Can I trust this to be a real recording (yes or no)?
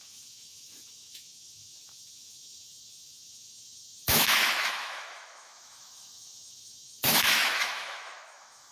no